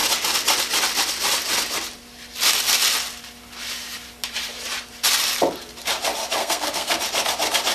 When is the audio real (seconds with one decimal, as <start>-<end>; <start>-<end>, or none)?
0.0-6.4; 7.0-7.7